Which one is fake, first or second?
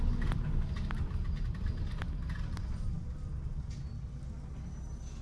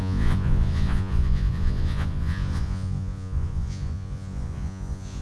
second